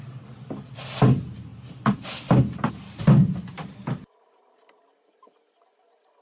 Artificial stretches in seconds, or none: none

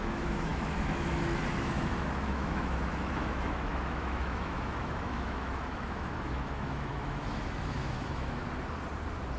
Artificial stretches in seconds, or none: 0.0-8.4 (autoencoder, DAC-VAE)